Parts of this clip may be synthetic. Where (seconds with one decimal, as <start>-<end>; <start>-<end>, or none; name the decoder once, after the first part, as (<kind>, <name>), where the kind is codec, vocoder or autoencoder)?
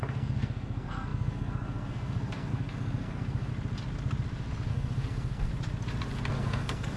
0.0-3.5 (codec, SNAC); 4.7-5.5; 6.3-7.0